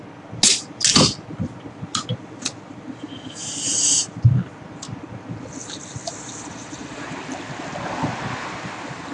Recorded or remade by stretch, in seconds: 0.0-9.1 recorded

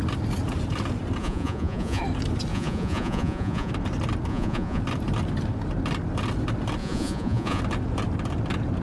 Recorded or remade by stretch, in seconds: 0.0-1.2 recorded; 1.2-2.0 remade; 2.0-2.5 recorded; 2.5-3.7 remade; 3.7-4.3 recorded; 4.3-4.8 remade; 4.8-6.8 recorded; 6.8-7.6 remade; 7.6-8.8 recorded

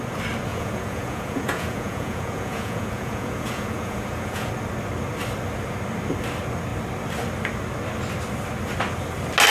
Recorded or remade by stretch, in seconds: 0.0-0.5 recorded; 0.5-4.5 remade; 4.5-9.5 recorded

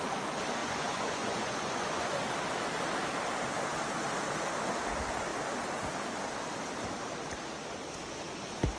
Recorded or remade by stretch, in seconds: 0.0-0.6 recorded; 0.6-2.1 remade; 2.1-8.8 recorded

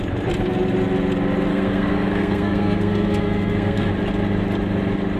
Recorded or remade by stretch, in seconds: 0.0-1.5 recorded; 1.5-3.9 remade; 3.9-5.2 recorded